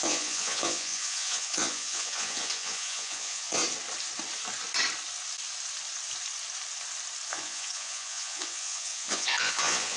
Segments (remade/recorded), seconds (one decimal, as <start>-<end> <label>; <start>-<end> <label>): 0.0-3.6 remade; 3.6-7.3 recorded; 7.3-10.0 remade